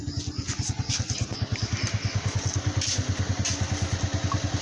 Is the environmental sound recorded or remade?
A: recorded